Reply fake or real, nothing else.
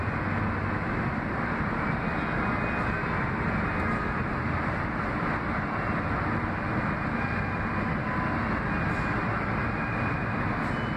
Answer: real